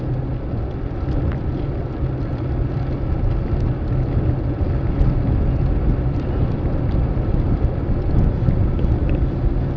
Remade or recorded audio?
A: recorded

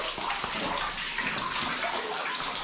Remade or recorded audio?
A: recorded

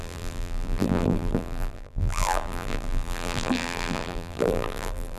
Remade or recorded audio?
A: remade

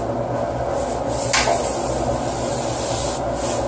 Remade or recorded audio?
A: recorded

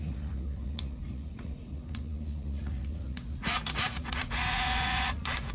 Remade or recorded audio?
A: remade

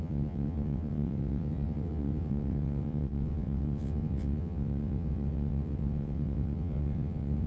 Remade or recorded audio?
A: remade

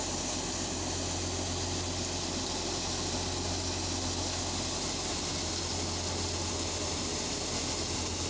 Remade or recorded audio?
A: recorded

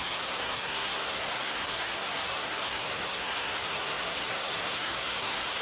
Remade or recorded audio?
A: remade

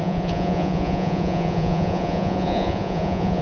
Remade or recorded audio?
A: remade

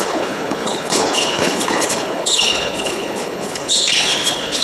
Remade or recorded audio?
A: remade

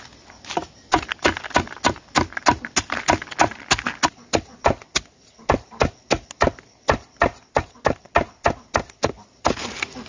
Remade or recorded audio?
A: recorded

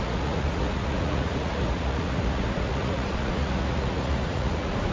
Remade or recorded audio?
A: remade